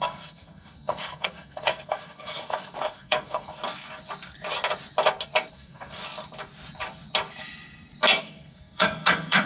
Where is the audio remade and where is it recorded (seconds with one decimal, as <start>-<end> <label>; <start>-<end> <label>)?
0.0-3.6 remade; 3.6-5.5 recorded; 5.5-6.0 remade; 6.0-8.2 recorded; 8.2-9.5 remade